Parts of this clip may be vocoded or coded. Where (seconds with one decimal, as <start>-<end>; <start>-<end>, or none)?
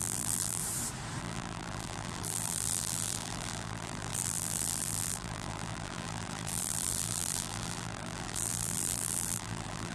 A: 0.0-0.6; 1.2-9.9